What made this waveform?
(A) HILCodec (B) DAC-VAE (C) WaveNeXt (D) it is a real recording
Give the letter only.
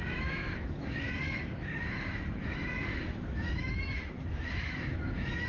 B